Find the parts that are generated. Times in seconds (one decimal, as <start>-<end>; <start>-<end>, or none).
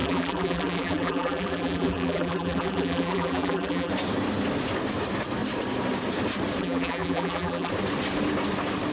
0.0-3.9; 6.6-7.7